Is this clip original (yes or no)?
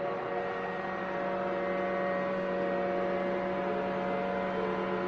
yes